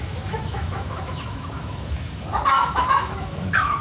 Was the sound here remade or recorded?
remade